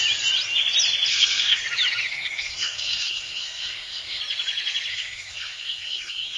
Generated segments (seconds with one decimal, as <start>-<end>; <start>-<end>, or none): 1.1-1.6; 2.1-4.2; 4.9-6.4